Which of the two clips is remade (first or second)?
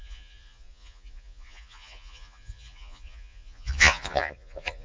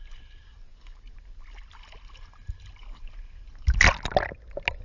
first